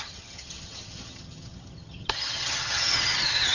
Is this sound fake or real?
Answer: fake